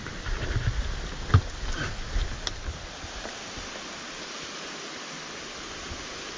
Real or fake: real